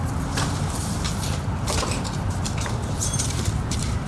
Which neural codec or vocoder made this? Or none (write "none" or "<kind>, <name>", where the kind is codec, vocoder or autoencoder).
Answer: vocoder, BigVGAN v2